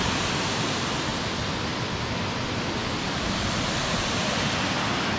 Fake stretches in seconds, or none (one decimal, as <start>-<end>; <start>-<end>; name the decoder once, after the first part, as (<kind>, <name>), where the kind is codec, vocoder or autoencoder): 0.0-1.1 (vocoder, BigVGAN v2); 1.7-5.2